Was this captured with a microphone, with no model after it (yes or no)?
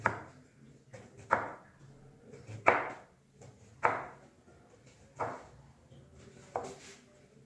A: yes